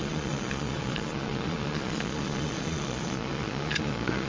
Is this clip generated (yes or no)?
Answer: yes